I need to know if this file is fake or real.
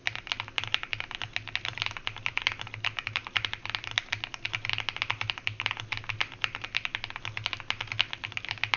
real